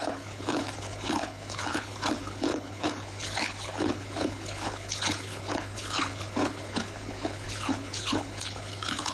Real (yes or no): no